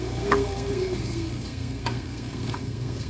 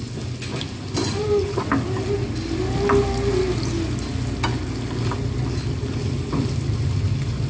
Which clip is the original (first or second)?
second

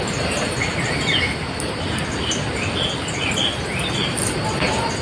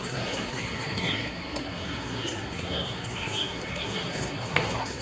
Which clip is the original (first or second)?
first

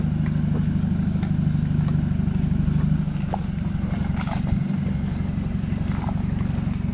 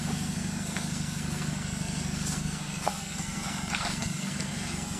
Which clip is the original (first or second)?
first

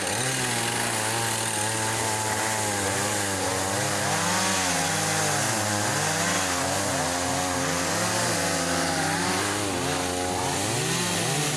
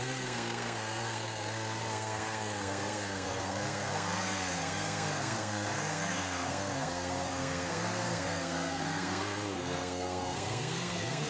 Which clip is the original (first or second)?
first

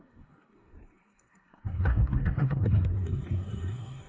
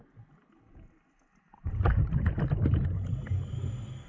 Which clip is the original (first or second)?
second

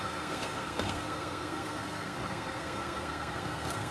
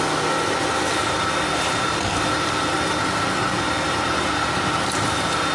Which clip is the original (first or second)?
second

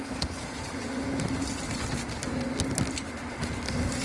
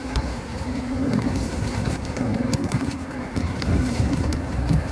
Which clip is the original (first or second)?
first